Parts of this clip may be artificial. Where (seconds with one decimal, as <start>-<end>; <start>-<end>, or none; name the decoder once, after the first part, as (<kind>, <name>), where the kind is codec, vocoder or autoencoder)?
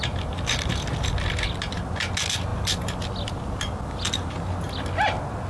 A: 2.5-4.3 (vocoder, BigVGAN v2)